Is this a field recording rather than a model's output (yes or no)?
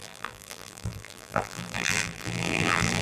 no